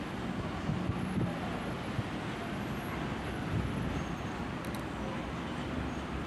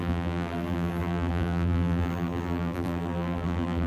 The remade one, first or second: second